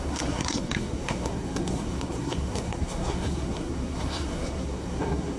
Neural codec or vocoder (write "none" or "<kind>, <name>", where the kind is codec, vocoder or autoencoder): codec, SNAC